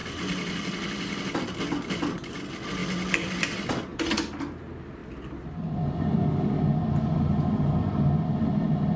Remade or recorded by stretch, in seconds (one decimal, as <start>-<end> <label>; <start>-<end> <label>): 0.0-2.8 recorded; 2.8-4.0 remade; 4.0-5.0 recorded; 5.0-6.5 remade; 6.5-9.0 recorded